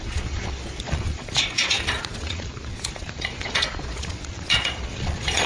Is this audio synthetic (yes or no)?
yes